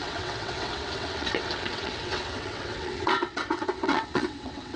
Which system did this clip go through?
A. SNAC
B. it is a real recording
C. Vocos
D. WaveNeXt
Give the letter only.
D